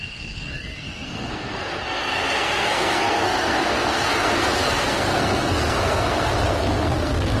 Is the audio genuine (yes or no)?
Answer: no